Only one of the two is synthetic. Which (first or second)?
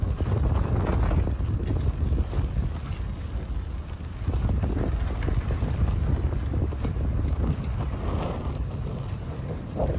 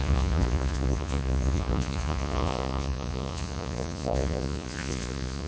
second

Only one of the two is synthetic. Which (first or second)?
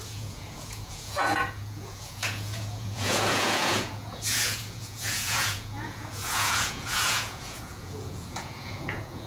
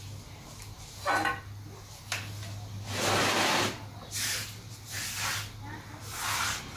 first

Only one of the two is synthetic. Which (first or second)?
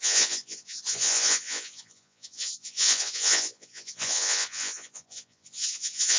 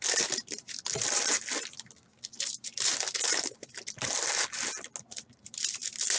first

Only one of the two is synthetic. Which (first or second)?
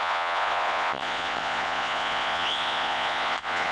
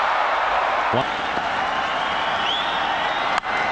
first